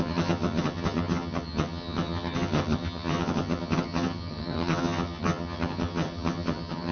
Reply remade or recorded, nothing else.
remade